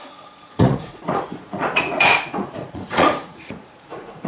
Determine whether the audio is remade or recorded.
remade